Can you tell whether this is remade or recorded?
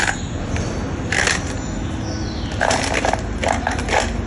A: recorded